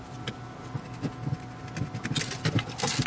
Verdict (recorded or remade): recorded